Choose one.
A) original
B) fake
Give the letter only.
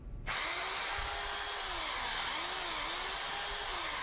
A